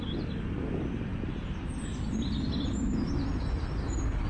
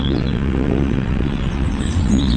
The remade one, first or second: second